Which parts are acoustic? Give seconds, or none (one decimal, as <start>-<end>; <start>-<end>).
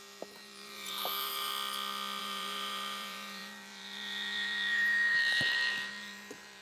1.5-2.2